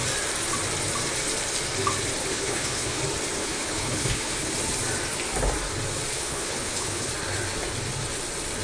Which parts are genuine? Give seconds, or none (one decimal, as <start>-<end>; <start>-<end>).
0.0-2.2; 3.0-3.4; 4.5-6.1; 7.1-8.6